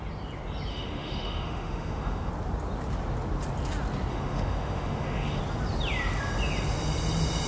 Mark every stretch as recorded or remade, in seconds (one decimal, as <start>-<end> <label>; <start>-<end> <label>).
0.0-0.7 recorded; 0.7-2.3 remade; 2.3-4.1 recorded; 4.1-5.4 remade; 5.4-7.5 recorded